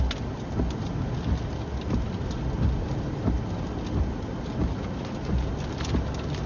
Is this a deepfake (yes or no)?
no